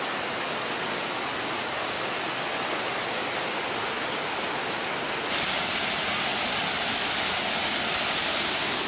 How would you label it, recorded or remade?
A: recorded